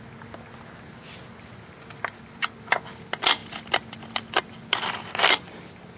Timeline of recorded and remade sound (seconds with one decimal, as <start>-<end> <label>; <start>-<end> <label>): 0.0-6.0 recorded